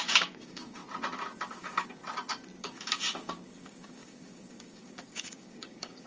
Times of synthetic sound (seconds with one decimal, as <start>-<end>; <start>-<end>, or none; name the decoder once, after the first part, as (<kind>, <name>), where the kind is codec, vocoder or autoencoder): 0.0-0.8 (codec, DAC); 1.5-2.0; 2.6-6.1